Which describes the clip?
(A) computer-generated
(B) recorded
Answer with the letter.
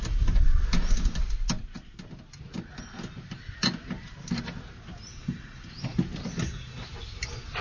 B